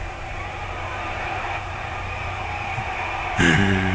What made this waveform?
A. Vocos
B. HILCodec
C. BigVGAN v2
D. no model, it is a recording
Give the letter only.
C